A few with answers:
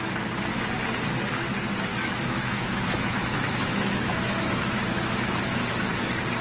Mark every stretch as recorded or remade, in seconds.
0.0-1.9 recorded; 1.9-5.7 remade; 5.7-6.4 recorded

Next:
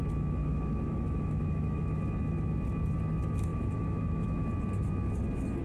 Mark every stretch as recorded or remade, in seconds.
0.0-0.4 recorded; 0.4-2.0 remade; 2.0-3.5 recorded; 3.5-4.5 remade; 4.5-5.6 recorded

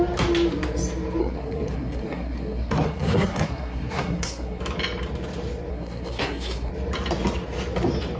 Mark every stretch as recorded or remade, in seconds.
0.0-1.2 recorded; 1.2-4.6 remade; 4.6-5.7 recorded; 5.7-6.7 remade; 6.7-8.2 recorded

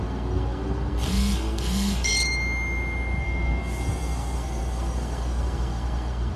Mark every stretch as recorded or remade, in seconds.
0.0-2.1 remade; 2.1-3.2 recorded; 3.2-6.4 remade

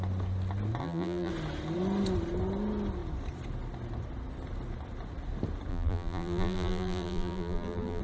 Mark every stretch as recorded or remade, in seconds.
0.0-0.8 recorded; 0.8-1.3 remade; 1.3-5.7 recorded; 5.7-8.0 remade